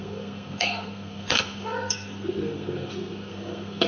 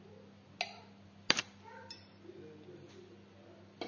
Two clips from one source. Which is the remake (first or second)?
first